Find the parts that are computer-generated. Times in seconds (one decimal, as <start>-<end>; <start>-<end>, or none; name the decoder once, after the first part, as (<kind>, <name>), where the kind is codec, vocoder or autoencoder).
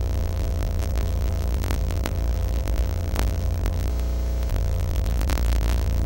0.0-3.9 (vocoder, BigVGAN v2); 4.5-6.1